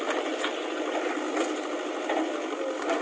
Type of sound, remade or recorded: recorded